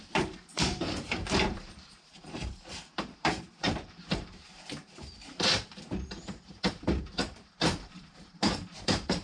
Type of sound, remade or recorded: remade